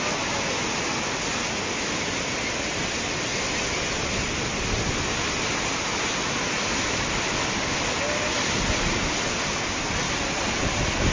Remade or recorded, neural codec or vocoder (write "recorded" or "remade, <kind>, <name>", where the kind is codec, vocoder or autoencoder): recorded